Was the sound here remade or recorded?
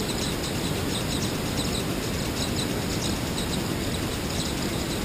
recorded